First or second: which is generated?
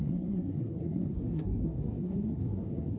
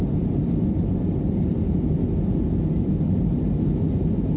first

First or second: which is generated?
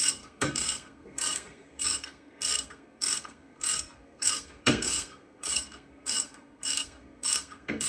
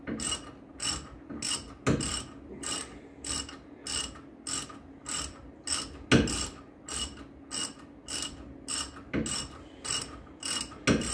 first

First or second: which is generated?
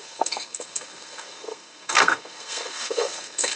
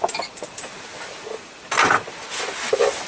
first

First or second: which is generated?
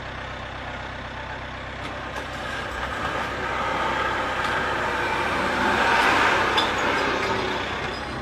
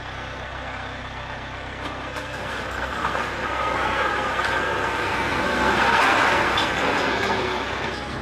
second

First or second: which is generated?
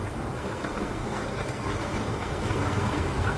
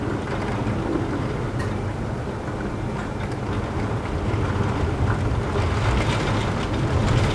first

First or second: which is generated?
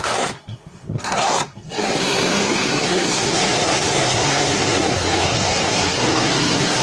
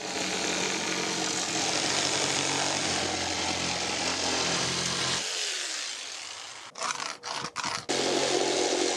first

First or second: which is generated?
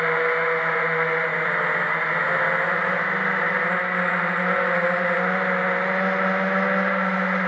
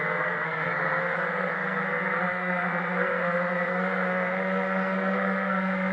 second